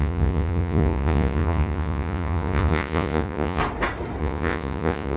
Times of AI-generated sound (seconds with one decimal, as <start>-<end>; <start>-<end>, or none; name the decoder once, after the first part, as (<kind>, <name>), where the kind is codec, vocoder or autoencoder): 0.0-3.6 (vocoder, Vocos); 4.2-5.2